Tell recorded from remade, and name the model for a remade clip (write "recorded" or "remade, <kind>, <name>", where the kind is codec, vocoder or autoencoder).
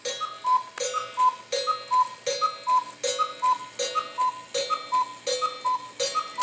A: recorded